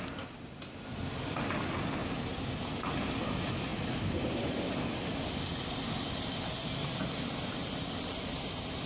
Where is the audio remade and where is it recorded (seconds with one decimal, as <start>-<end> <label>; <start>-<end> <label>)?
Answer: 0.0-7.6 recorded; 7.6-8.5 remade; 8.5-8.9 recorded